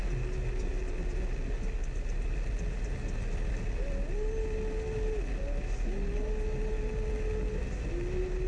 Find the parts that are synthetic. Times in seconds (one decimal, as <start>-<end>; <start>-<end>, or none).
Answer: none